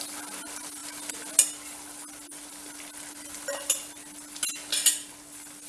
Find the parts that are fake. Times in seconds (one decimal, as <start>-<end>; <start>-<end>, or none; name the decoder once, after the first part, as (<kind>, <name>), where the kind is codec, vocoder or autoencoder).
none